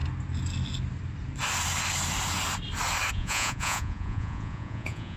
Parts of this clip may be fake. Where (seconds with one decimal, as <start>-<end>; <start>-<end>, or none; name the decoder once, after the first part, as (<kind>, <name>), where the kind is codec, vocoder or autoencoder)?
3.1-5.2 (vocoder, Vocos)